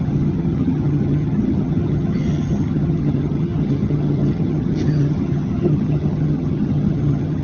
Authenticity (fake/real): fake